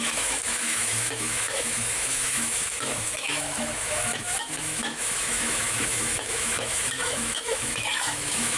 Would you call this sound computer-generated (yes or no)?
yes